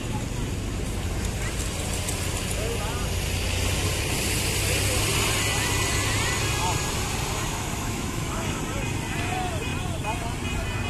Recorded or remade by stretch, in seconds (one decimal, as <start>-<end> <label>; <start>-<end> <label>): 0.0-7.5 recorded; 7.5-8.6 remade; 8.6-10.9 recorded